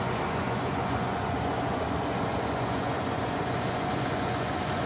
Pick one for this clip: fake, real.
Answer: fake